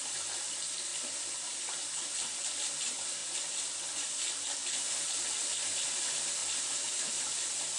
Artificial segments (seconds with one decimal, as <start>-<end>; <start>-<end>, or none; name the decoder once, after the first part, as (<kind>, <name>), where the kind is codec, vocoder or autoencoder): none